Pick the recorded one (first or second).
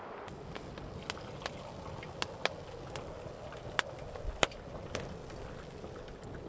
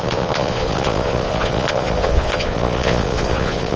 first